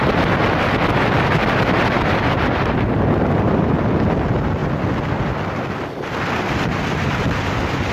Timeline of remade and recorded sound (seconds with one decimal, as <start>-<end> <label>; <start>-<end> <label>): 0.0-7.9 recorded

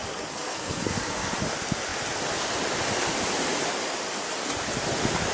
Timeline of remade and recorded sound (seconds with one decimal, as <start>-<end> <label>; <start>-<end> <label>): 0.0-1.3 remade; 1.3-5.3 recorded

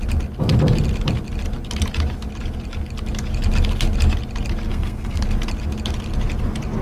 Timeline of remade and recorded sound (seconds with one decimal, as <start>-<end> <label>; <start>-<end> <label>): 0.0-4.7 recorded; 4.7-5.2 remade; 5.2-6.8 recorded

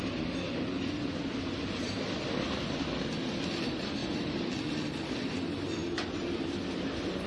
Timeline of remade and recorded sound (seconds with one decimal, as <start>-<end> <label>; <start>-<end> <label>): 0.0-7.3 recorded

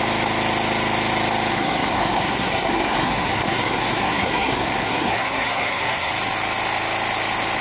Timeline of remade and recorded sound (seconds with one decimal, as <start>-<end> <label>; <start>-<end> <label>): 0.0-1.5 recorded; 1.5-6.1 remade; 6.1-7.6 recorded